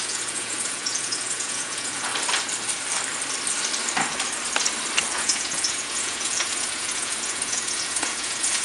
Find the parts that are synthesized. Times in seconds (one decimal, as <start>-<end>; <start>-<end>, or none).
0.0-2.1; 5.1-8.6

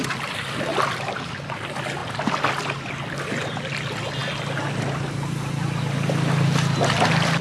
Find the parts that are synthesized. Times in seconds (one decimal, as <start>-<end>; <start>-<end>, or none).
none

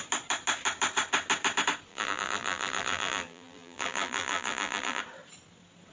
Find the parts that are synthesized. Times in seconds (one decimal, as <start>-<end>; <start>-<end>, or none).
1.9-5.0

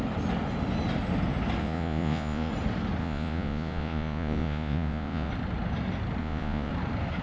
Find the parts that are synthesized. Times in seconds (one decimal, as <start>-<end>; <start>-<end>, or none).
1.6-2.5; 3.0-5.3; 6.2-6.7

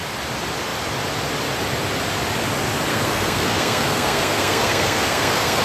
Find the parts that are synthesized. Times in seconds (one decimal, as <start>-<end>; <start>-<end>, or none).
2.9-5.6

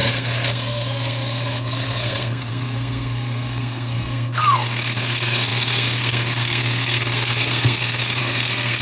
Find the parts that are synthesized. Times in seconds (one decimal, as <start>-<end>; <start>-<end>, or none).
0.0-8.8

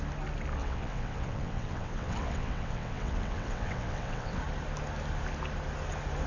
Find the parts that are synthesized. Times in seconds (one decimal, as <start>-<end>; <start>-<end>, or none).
0.6-4.4